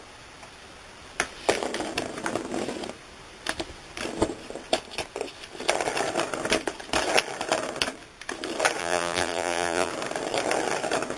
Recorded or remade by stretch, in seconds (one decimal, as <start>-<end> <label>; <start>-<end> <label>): 0.0-8.8 recorded; 8.8-9.9 remade; 9.9-11.2 recorded